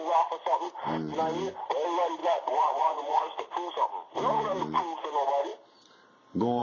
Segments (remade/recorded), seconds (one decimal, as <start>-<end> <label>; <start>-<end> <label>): 0.0-2.2 recorded; 2.2-3.7 remade; 3.7-6.6 recorded